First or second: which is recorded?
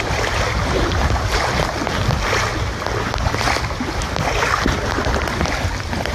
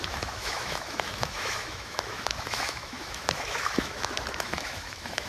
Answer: first